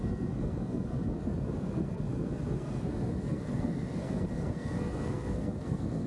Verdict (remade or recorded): remade